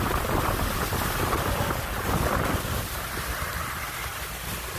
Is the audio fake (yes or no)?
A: no